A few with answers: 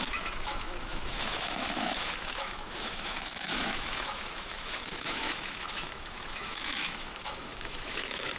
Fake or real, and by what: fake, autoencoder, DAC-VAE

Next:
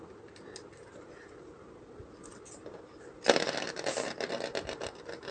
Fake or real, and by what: real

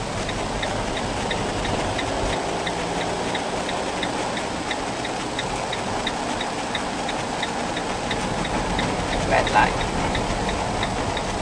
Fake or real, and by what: real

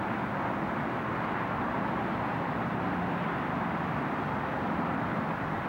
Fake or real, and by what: real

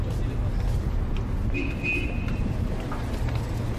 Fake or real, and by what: real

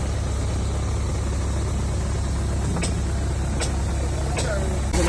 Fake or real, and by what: real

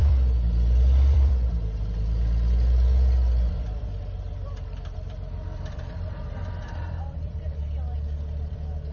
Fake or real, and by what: fake, vocoder, BigVGAN v2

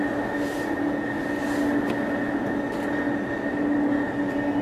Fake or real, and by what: real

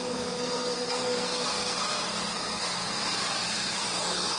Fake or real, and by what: fake, codec, SNAC